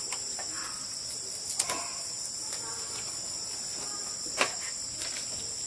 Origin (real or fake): real